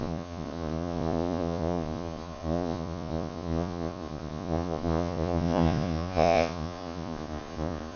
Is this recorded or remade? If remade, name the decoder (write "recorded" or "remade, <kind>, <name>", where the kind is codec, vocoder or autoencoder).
remade, vocoder, Vocos